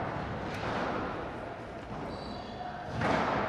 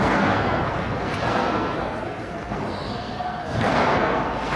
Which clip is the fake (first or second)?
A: second